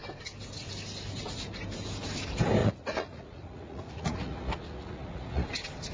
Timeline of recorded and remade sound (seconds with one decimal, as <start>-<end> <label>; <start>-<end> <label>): 0.0-2.6 recorded; 2.6-5.5 remade; 5.5-5.9 recorded